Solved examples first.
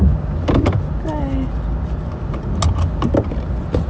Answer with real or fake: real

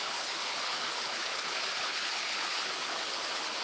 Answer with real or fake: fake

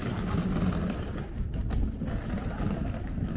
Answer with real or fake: real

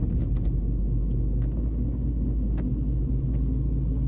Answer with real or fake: real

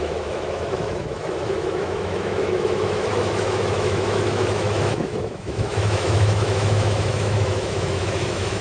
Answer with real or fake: fake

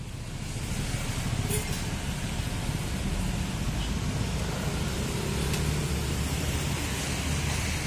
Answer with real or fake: real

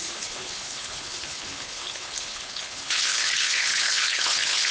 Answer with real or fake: fake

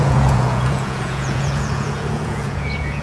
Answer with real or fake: fake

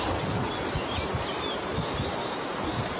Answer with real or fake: fake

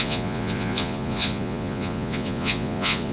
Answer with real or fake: fake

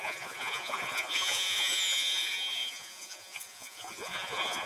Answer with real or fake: fake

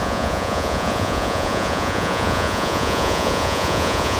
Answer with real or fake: fake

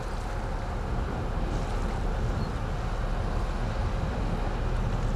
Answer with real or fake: real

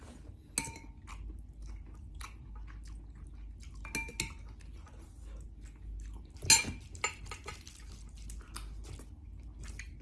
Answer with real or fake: real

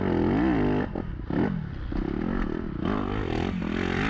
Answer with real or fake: real